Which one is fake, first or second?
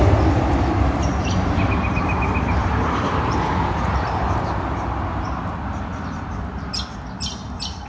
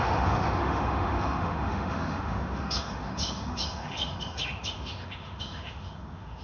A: second